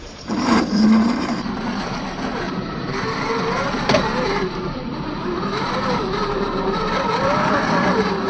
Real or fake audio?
fake